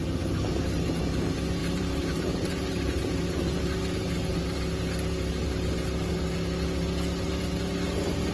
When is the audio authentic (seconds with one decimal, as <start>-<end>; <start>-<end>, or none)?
0.0-1.6; 3.0-8.3